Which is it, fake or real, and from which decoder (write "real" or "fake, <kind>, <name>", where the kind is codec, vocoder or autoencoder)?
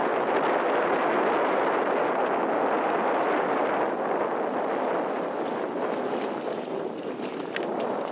real